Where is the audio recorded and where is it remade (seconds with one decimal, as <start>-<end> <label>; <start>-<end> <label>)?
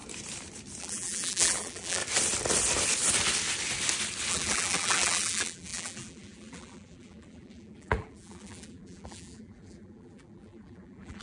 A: 0.0-0.8 recorded; 0.8-2.0 remade; 2.0-4.3 recorded; 4.3-11.2 remade